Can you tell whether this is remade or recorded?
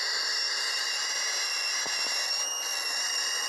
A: recorded